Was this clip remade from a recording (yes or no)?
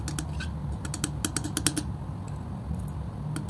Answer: no